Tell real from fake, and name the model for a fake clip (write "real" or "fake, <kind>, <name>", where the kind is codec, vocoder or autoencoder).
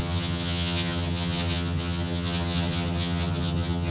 fake, vocoder, HiFi-GAN